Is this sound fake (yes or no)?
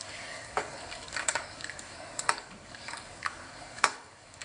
yes